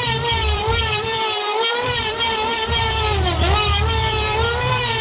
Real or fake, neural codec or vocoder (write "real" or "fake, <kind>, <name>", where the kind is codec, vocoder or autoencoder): fake, vocoder, BigVGAN v2